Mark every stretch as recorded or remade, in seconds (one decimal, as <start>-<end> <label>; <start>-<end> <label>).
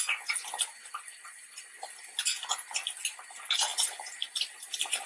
0.0-3.7 recorded; 3.7-5.1 remade